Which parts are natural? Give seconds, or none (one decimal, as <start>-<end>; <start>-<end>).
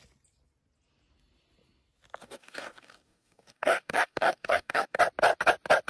0.0-2.2; 5.0-5.9